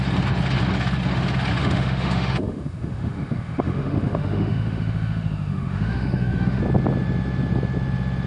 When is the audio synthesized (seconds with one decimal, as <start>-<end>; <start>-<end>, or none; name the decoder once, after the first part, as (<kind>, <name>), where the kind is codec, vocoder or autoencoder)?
1.6-6.6 (autoencoder, DAC-VAE)